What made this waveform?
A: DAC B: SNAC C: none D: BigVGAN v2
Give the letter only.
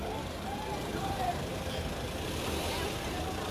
D